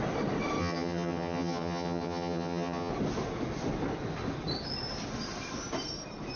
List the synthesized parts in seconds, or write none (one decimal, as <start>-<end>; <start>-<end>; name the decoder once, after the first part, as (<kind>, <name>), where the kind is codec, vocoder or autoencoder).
0.6-2.9 (vocoder, HiFi-GAN)